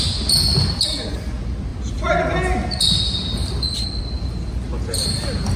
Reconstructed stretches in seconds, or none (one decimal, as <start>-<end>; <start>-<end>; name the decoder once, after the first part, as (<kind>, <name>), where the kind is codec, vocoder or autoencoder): none

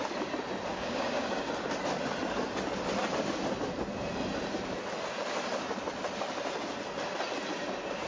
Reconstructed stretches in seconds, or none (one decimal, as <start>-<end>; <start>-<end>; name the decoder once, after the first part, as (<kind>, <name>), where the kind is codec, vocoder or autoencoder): 0.7-1.5 (codec, DAC)

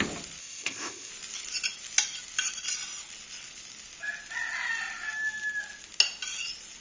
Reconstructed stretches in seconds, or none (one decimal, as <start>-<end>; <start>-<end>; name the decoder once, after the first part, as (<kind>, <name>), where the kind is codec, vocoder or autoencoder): 0.4-1.1 (codec, ZipCodec)

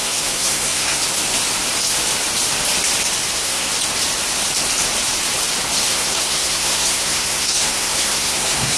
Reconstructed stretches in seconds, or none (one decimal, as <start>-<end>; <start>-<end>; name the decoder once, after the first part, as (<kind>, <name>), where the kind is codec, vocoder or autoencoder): 0.0-1.0 (codec, SNAC); 3.3-3.7; 5.9-8.8

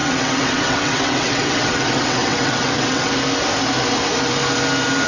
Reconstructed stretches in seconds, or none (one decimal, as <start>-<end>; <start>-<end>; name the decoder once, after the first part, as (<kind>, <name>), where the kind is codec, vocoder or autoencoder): 0.0-3.1 (vocoder, WaveNeXt)